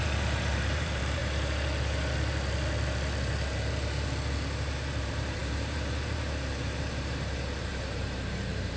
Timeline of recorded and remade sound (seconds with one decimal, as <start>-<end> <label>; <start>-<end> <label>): 0.0-1.2 remade; 1.2-5.0 recorded; 5.0-8.8 remade